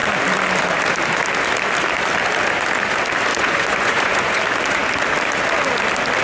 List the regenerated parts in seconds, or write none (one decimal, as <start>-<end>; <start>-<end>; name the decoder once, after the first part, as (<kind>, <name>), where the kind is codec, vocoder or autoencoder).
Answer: 3.3-4.4 (vocoder, Vocos)